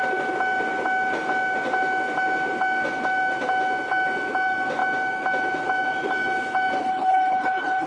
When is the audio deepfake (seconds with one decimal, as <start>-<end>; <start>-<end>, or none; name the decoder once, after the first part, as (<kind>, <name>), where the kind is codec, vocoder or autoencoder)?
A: 6.8-7.9 (codec, HILCodec)